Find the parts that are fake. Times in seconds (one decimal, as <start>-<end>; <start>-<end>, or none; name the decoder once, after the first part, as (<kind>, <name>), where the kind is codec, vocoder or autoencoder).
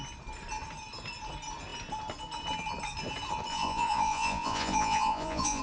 3.5-5.6 (vocoder, Vocos)